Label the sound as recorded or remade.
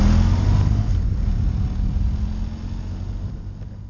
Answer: recorded